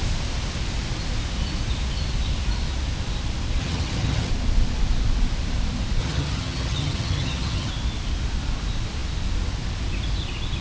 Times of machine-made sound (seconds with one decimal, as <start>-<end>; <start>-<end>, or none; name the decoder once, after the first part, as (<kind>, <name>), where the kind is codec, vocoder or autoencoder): 3.6-4.3 (vocoder, HiFi-GAN); 6.0-7.7